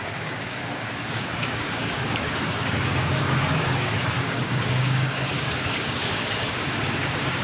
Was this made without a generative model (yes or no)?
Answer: no